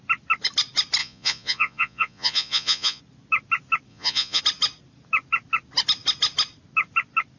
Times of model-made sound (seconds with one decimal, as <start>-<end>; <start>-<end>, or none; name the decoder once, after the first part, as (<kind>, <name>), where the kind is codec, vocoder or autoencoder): 1.0-3.0 (vocoder, Vocos); 3.9-4.4